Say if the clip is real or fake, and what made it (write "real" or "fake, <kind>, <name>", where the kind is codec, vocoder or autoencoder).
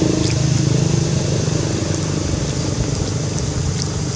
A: real